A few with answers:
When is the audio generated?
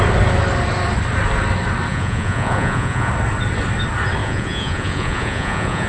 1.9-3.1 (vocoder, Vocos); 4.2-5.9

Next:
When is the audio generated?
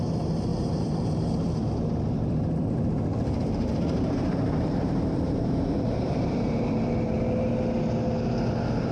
0.5-1.7 (vocoder, BigVGAN v2); 3.1-7.5